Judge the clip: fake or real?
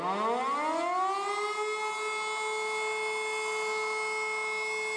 real